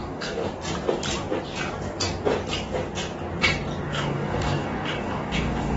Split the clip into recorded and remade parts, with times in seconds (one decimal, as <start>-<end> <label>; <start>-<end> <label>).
0.0-0.4 remade; 0.4-3.9 recorded; 3.9-5.8 remade